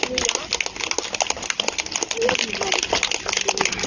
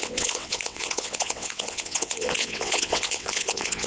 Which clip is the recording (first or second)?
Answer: first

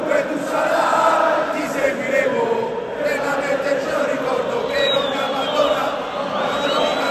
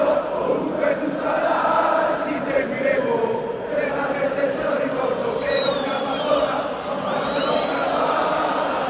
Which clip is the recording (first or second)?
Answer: first